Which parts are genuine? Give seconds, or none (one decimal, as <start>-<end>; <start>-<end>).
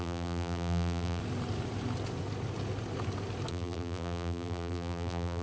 1.2-3.5